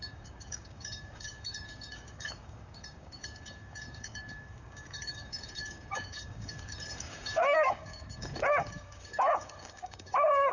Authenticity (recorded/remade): remade